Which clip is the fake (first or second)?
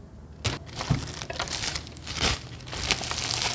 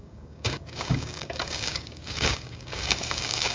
second